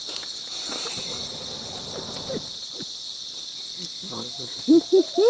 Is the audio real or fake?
real